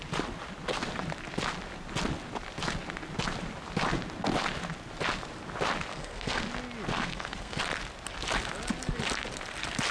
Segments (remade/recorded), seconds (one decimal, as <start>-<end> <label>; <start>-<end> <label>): 0.0-5.9 recorded; 5.9-6.4 remade; 6.4-6.9 recorded; 6.9-7.6 remade; 7.6-9.9 recorded